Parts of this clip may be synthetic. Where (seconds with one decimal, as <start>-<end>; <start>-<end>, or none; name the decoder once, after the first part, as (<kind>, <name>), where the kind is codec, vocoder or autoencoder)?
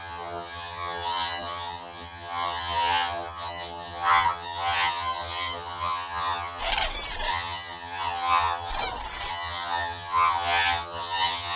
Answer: 0.0-6.6 (vocoder, HiFi-GAN); 7.3-8.7; 9.3-11.6